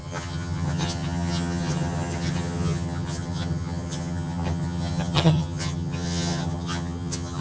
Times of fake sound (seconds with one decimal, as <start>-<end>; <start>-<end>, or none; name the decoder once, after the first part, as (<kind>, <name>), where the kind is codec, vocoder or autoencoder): 0.0-7.4 (vocoder, HiFi-GAN)